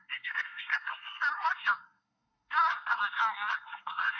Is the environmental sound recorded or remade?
remade